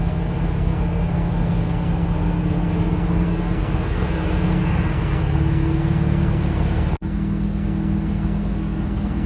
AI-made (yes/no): yes